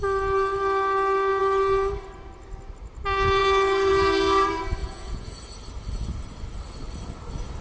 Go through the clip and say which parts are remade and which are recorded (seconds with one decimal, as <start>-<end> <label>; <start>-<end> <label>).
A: 0.0-4.8 recorded; 4.8-5.4 remade; 5.4-7.6 recorded